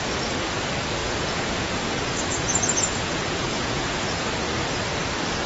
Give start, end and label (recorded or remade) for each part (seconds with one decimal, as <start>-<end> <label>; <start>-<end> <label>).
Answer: 0.0-1.0 recorded; 1.0-4.3 remade; 4.3-5.5 recorded